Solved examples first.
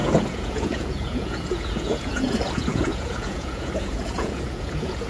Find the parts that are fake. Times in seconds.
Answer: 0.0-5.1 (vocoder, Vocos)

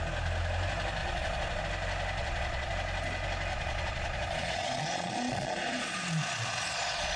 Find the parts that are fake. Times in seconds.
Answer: 1.0-1.6 (vocoder, Vocos); 2.2-2.7; 3.5-7.2

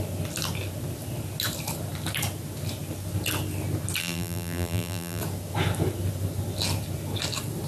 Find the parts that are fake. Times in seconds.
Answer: 4.0-5.2 (vocoder, BigVGAN v2)

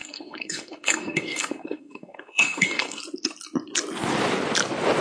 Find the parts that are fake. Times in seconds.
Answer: 0.0-3.0 (codec, SNAC)

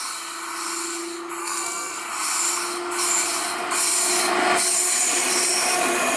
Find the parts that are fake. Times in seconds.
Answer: 1.4-2.0 (codec, SNAC)

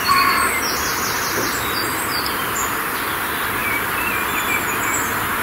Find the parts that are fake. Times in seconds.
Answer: 0.9-2.8 (vocoder, BigVGAN v2); 3.6-4.6

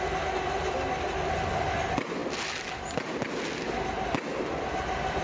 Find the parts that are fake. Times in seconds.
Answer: none